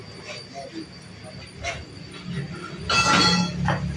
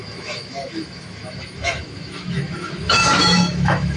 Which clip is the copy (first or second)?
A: second